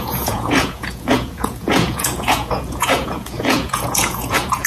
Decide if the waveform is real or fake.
fake